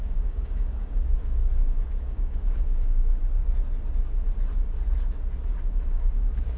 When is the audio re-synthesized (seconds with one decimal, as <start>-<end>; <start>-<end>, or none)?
0.0-3.4; 5.7-6.6